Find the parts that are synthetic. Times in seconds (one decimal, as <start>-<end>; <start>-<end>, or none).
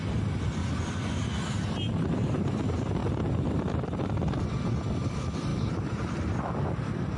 0.6-2.6; 3.0-3.7; 5.5-6.1